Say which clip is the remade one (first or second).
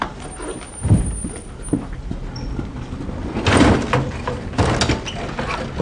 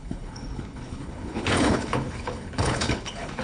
second